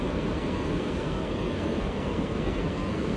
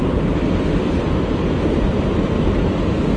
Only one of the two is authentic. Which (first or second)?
second